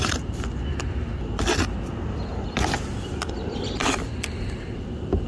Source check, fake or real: real